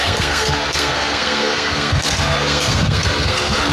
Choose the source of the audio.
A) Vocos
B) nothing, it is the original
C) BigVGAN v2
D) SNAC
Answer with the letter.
D